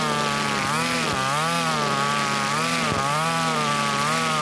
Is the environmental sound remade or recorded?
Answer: recorded